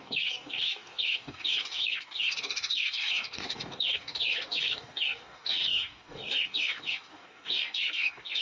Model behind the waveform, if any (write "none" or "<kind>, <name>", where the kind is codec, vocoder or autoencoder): codec, DAC